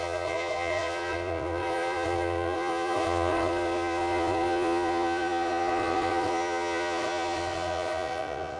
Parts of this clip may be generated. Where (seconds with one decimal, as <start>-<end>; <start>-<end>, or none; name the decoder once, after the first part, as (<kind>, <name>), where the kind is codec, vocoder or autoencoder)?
0.0-8.6 (vocoder, Vocos)